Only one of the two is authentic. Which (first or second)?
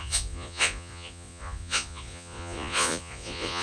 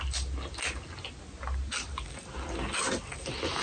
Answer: second